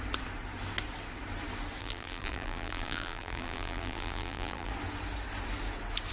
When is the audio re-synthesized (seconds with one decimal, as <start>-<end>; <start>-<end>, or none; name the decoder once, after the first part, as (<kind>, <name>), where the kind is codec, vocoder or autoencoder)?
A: 1.8-4.7 (vocoder, BigVGAN v2)